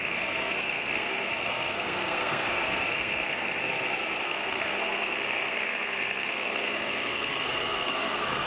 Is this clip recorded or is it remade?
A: remade